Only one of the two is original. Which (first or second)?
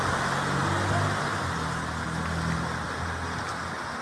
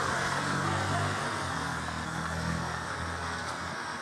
first